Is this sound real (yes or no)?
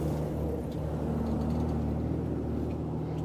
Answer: yes